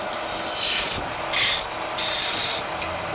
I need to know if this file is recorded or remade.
recorded